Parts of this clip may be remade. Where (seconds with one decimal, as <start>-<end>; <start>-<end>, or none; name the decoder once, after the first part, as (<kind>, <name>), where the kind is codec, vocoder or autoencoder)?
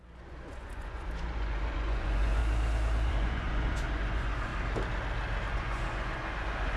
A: 0.0-2.4 (vocoder, Vocos); 3.1-4.5; 5.5-6.8